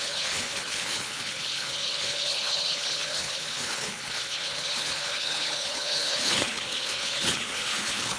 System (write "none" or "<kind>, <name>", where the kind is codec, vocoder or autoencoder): codec, HILCodec